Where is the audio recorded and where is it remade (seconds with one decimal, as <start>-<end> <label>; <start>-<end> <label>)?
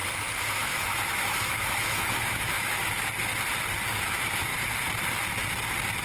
0.0-0.6 recorded; 0.6-3.3 remade; 3.3-3.8 recorded; 3.8-4.5 remade; 4.5-6.0 recorded